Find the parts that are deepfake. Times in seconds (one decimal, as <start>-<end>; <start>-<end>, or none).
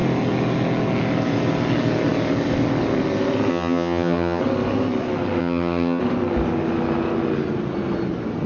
3.5-4.4; 5.4-6.0